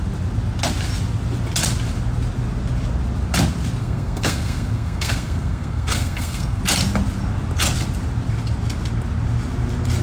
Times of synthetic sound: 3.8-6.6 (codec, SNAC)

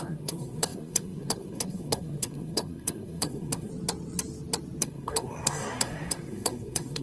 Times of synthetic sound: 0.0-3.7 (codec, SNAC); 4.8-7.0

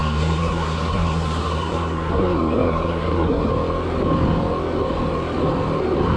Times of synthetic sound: 0.0-3.5 (codec, SNAC)

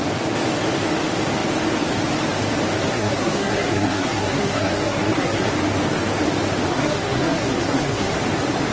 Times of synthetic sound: 2.8-5.5 (codec, SNAC); 6.7-8.2